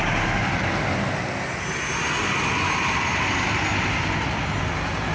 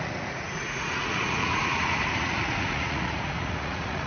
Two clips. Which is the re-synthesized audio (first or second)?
second